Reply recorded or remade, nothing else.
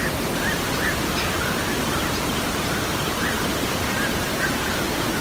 recorded